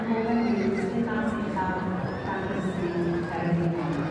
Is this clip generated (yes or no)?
no